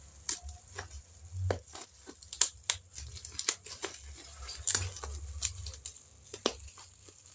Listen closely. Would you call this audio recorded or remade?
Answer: recorded